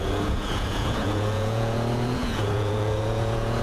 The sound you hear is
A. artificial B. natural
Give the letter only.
A